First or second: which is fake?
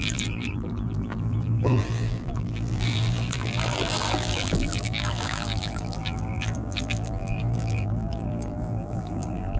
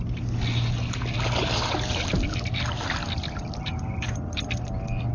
first